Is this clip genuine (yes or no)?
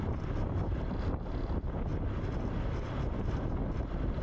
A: yes